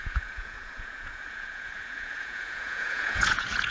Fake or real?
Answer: fake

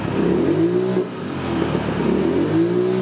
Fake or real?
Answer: real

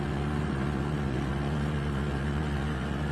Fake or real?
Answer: fake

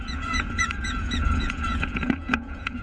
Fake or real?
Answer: fake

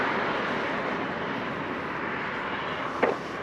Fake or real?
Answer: real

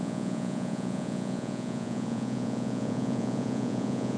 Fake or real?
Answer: fake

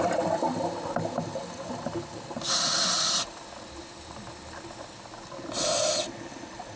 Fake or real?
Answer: real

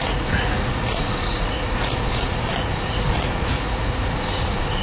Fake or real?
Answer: fake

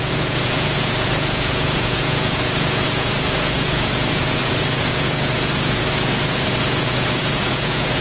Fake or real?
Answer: fake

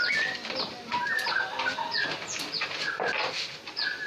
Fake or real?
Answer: real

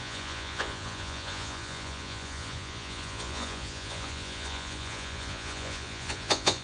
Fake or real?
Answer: fake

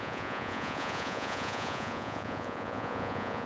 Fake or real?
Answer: fake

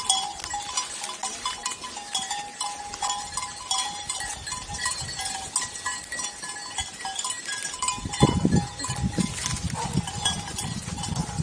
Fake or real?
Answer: real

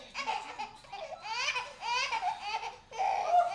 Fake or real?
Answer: real